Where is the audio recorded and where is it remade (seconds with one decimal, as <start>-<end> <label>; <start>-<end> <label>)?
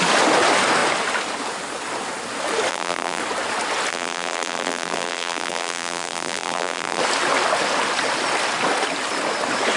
0.0-2.7 recorded; 2.7-3.2 remade; 3.2-3.9 recorded; 3.9-7.0 remade; 7.0-9.8 recorded